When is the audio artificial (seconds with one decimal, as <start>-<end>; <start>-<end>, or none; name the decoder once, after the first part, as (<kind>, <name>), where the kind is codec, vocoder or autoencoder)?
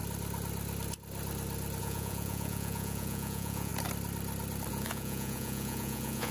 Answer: 1.8-3.7 (vocoder, Vocos); 4.7-6.3